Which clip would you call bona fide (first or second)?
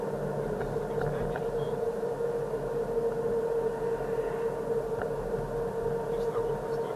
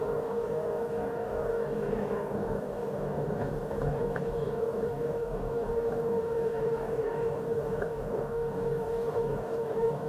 first